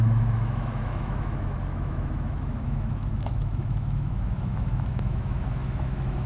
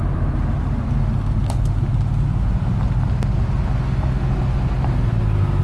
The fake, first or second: first